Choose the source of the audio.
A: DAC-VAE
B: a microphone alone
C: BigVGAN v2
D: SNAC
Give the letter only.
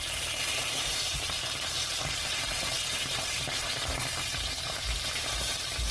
C